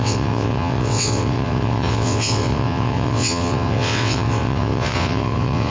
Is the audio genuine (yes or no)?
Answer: no